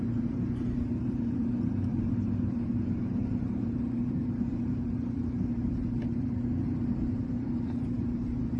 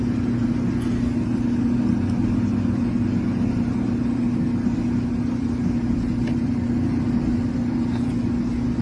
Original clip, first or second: second